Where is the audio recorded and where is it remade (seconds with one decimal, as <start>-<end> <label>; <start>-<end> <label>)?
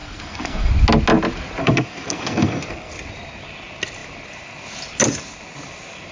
0.0-0.7 remade; 0.7-1.6 recorded; 1.6-2.9 remade; 2.9-6.1 recorded